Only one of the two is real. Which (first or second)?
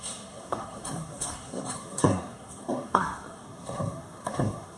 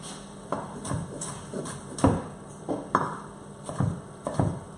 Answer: second